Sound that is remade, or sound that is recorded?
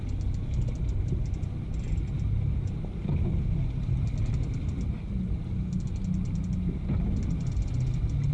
recorded